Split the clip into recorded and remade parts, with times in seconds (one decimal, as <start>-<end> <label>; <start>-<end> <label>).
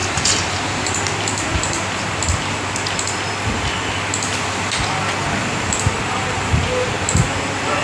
0.0-2.1 remade; 2.1-5.4 recorded; 5.4-6.9 remade; 6.9-7.8 recorded